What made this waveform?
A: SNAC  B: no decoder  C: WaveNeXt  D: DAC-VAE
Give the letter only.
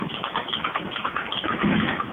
D